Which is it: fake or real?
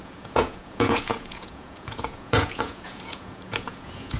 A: fake